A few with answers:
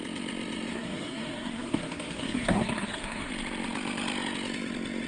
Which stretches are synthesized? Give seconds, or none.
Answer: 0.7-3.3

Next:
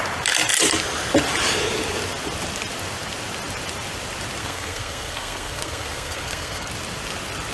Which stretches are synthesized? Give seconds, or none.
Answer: 4.4-6.7

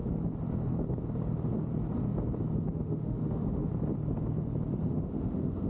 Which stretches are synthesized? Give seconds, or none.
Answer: 2.7-3.7; 4.9-5.7

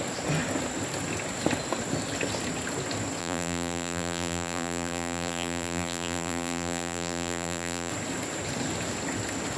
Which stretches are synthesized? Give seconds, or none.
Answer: 3.2-7.9